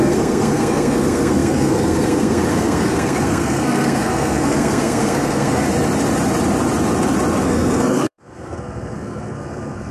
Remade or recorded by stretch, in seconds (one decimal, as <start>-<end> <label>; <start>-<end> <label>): 0.0-5.7 remade; 5.7-7.4 recorded; 7.4-9.9 remade